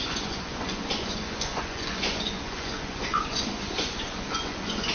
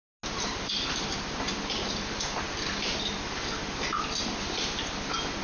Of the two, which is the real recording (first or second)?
second